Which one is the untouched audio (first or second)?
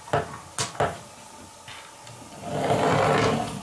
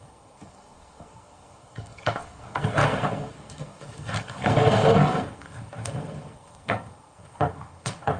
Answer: first